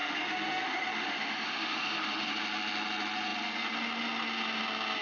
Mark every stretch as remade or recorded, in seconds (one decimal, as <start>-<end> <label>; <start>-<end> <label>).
0.0-2.3 remade; 2.3-5.0 recorded